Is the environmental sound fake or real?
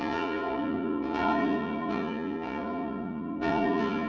fake